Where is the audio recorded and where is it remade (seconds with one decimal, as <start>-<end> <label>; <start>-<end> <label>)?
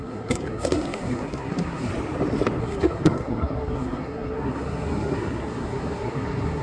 0.0-1.9 remade; 1.9-2.6 recorded; 2.6-6.6 remade